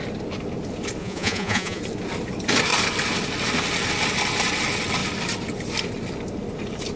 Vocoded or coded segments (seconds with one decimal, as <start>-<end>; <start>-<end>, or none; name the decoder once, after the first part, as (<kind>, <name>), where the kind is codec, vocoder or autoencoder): 1.0-1.8 (vocoder, Vocos)